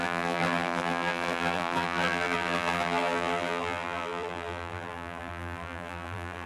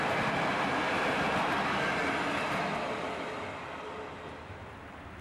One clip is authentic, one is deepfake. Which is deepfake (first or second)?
first